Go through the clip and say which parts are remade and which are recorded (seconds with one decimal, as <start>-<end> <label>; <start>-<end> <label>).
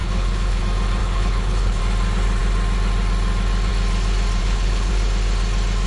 0.0-0.6 remade; 0.6-1.0 recorded; 1.0-1.8 remade; 1.8-4.4 recorded; 4.4-4.9 remade; 4.9-5.9 recorded